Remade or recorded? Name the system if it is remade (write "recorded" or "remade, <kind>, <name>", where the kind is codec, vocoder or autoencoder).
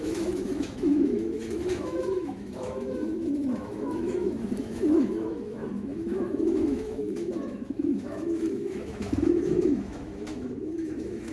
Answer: remade, autoencoder, DAC-VAE